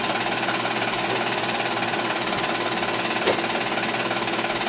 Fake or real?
real